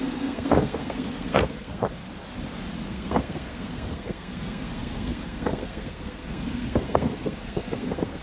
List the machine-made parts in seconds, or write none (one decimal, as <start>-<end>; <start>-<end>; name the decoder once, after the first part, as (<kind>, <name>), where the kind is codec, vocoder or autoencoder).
0.0-2.0 (codec, SNAC); 2.9-8.2